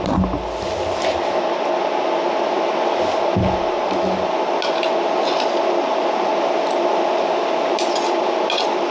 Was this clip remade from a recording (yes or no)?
no